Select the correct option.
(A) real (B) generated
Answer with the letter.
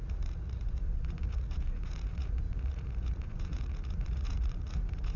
B